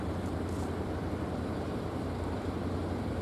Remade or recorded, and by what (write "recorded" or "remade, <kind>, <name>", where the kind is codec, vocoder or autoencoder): remade, vocoder, BigVGAN v2